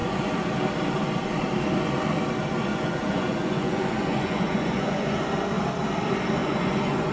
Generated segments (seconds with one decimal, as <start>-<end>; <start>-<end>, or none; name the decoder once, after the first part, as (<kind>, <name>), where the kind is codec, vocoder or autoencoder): 0.0-0.5 (vocoder, Vocos); 2.7-5.2; 6.4-7.1